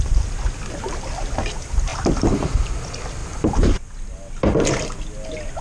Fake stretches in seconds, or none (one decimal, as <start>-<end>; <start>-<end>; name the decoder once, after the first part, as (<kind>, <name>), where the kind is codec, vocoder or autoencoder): 1.9-2.7 (vocoder, BigVGAN v2)